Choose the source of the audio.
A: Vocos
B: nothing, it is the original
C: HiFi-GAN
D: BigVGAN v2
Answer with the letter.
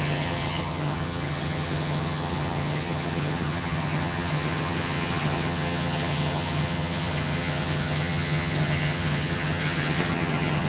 C